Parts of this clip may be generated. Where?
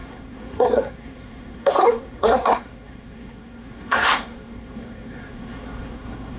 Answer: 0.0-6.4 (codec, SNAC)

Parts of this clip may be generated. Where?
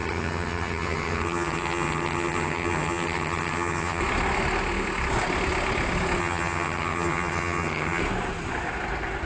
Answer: 0.0-4.0 (vocoder, HiFi-GAN); 6.2-8.0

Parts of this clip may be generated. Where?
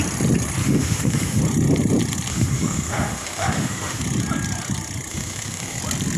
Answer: 0.6-1.4 (autoencoder, DAC-VAE); 2.3-4.0; 5.1-5.8